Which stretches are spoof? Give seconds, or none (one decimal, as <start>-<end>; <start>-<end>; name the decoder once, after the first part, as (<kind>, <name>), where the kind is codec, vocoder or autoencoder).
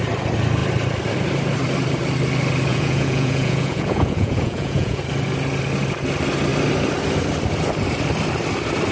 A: 2.7-5.0 (vocoder, Vocos)